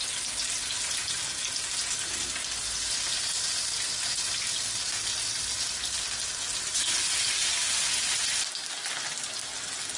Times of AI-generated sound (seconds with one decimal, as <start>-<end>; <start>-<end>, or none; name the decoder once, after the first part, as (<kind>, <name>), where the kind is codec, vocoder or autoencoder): none